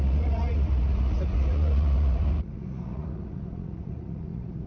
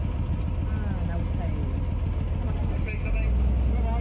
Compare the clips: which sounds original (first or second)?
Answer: second